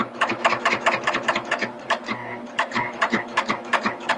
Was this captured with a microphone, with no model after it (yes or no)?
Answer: no